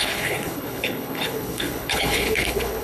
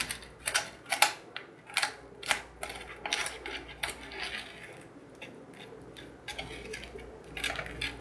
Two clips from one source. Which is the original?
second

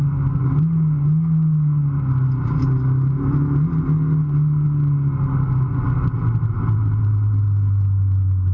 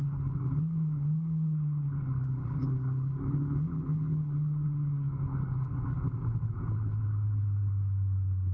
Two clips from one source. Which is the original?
first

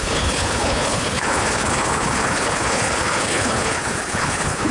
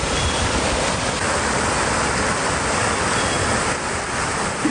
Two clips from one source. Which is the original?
second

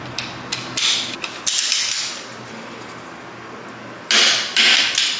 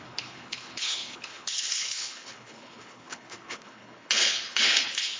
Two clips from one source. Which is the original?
first